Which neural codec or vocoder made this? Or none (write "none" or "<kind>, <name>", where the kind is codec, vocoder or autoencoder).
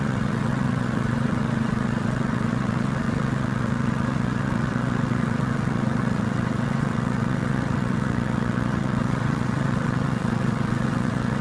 vocoder, WaveNeXt